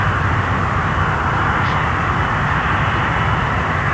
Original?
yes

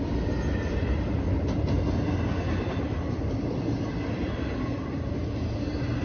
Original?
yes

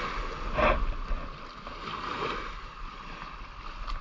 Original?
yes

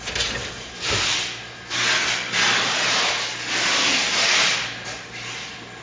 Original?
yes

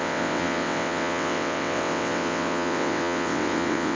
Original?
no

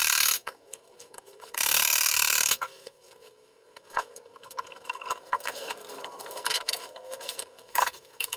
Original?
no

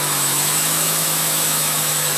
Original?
no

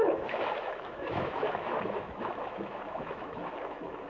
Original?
no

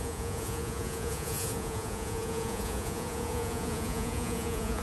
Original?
no